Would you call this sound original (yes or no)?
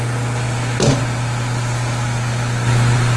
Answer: yes